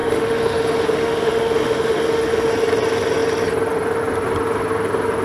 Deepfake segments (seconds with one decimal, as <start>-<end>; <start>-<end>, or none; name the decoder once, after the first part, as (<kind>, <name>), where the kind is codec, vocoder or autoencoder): 0.0-2.5 (autoencoder, DAC-VAE)